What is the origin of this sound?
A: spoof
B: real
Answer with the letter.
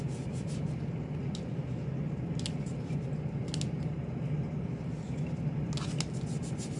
B